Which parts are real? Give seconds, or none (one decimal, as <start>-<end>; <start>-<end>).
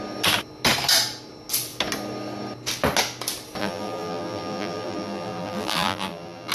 0.0-3.6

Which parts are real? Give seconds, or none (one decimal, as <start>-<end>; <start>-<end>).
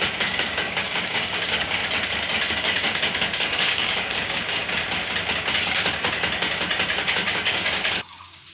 1.8-2.5; 4.6-7.0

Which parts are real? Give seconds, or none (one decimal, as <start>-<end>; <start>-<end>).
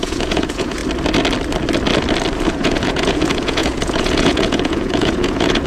0.8-2.5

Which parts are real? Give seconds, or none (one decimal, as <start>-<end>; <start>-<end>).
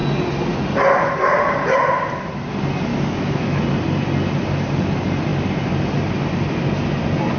0.0-2.9; 3.6-7.4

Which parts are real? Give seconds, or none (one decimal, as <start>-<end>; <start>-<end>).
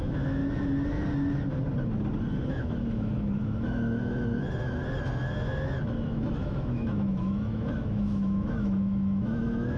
0.4-2.5; 4.3-6.0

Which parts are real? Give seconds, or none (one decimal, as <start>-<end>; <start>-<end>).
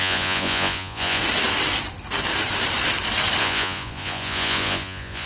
1.2-3.4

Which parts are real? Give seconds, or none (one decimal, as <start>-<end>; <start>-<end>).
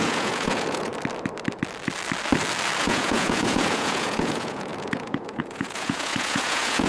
0.9-2.8